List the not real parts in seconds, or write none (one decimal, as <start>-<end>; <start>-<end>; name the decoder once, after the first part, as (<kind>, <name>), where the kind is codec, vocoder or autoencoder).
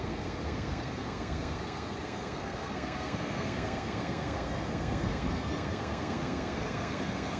0.0-7.4 (codec, SNAC)